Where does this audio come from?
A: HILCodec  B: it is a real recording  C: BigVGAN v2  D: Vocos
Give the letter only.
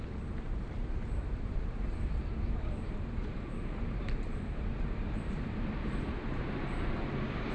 C